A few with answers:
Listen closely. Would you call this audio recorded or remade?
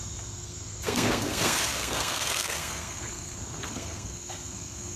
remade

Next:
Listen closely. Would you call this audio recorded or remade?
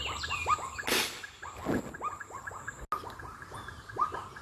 recorded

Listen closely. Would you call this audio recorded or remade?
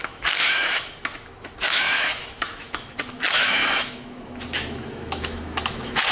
remade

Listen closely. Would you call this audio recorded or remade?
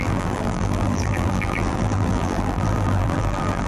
remade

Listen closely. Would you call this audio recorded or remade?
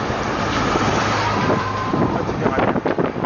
remade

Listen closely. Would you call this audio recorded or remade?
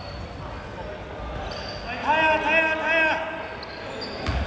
recorded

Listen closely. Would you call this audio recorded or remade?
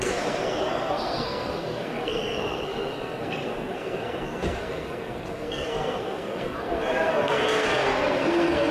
remade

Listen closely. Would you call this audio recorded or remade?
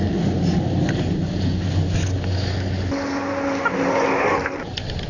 recorded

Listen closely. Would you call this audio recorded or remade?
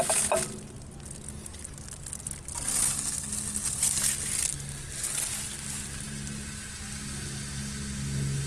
recorded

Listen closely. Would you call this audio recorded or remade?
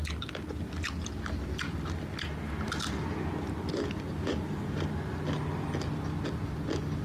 recorded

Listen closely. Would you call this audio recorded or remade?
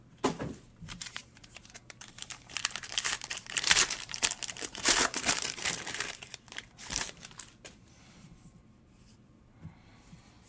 remade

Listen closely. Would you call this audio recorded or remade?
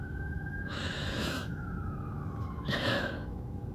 remade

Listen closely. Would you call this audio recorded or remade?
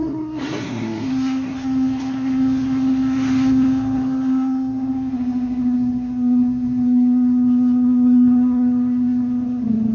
remade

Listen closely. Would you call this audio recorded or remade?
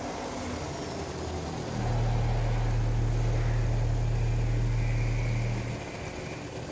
recorded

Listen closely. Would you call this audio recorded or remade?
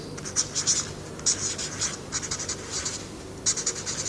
recorded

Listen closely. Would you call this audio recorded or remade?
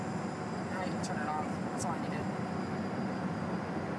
recorded